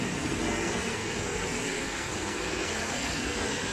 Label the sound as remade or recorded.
remade